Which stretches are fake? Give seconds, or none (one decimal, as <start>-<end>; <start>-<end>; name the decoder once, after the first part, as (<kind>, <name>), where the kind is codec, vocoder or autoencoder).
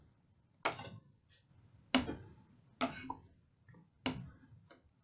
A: none